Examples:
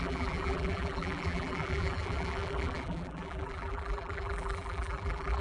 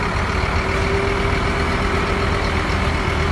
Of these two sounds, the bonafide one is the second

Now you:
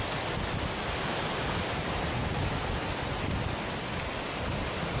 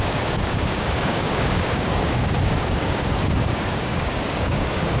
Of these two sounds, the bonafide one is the first